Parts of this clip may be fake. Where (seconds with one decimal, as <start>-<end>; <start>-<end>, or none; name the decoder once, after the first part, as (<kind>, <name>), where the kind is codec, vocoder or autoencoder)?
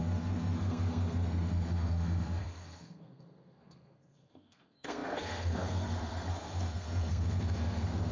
0.0-8.1 (codec, SNAC)